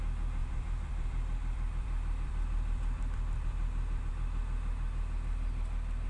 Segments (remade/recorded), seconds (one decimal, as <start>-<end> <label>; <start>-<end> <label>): 0.0-0.4 recorded; 0.4-4.1 remade; 4.1-6.1 recorded